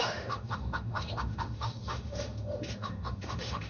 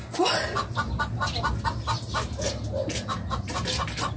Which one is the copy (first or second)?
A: first